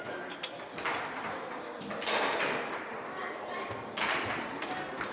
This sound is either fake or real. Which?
real